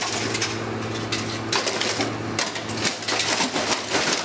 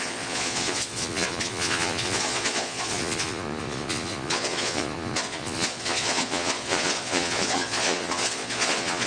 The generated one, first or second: second